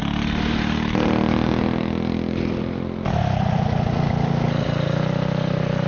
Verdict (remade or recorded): recorded